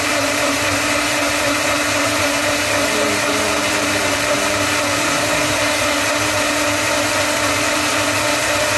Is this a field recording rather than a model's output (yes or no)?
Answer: no